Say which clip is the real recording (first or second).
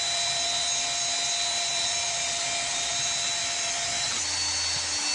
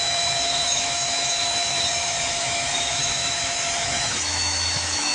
first